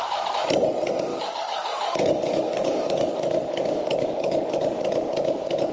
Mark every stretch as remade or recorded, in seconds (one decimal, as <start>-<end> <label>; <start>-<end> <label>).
0.0-1.1 recorded; 1.1-4.5 remade; 4.5-5.7 recorded